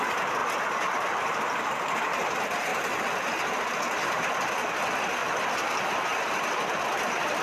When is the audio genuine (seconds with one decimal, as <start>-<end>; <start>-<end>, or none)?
0.0-0.4; 1.6-5.2; 5.9-7.4